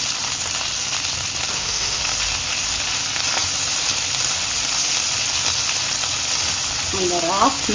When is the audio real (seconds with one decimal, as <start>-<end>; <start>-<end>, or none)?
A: 0.0-1.5; 2.0-7.7